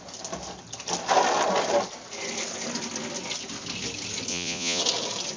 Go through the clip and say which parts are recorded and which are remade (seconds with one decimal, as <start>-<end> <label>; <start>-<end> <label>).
0.0-4.3 recorded; 4.3-4.8 remade; 4.8-5.4 recorded